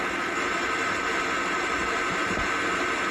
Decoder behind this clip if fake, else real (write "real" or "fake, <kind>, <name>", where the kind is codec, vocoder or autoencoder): real